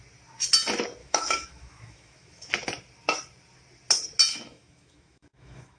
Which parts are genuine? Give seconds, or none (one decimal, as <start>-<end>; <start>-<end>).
0.0-1.0; 2.5-4.3